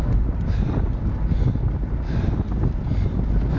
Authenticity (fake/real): real